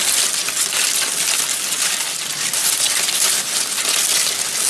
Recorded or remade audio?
recorded